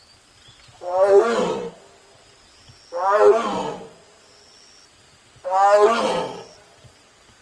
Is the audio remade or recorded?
recorded